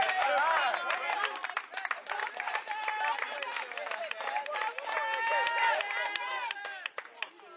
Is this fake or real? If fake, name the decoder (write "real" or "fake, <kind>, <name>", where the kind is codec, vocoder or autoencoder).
real